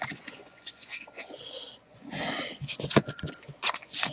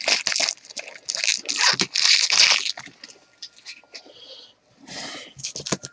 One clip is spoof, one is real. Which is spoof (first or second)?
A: first